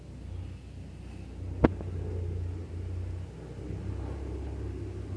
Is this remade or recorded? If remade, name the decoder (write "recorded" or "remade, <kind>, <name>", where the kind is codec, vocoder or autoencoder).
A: recorded